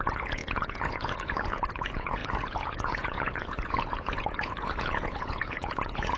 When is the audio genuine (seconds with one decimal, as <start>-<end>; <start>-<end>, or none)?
none